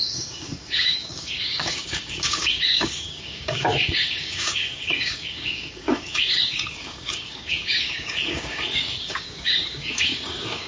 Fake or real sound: fake